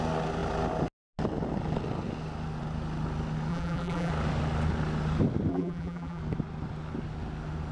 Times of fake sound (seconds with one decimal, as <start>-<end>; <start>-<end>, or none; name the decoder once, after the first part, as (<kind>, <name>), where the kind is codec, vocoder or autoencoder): 3.5-4.1 (vocoder, BigVGAN v2); 5.5-6.2